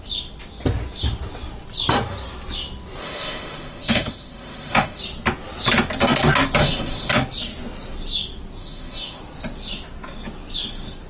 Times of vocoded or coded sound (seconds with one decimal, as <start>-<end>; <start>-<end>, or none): 3.0-5.0; 6.6-7.1; 8.6-9.2